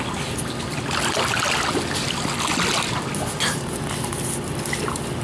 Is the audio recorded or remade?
recorded